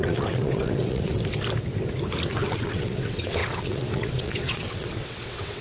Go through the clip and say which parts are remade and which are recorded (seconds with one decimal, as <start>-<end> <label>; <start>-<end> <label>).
0.0-1.1 remade; 1.1-2.3 recorded; 2.3-5.6 remade